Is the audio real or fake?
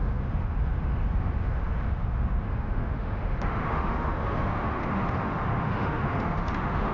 fake